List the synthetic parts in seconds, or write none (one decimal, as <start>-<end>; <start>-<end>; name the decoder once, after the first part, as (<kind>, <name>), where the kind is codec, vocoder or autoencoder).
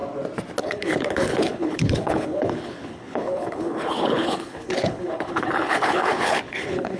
0.6-7.0 (codec, HILCodec)